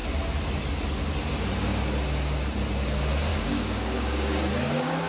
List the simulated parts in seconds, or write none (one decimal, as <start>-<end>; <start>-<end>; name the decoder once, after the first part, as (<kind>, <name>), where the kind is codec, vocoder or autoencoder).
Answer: 3.3-5.1 (codec, DAC)